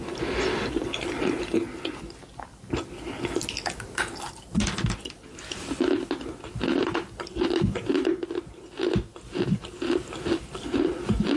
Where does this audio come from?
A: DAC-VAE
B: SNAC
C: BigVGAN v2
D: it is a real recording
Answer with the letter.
D